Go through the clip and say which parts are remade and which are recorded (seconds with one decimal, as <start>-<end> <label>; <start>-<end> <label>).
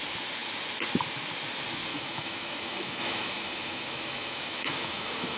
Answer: 0.0-1.9 recorded; 1.9-5.4 remade